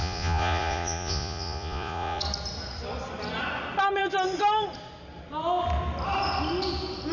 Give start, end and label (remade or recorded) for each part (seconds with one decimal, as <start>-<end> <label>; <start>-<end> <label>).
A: 0.0-2.2 remade; 2.2-7.1 recorded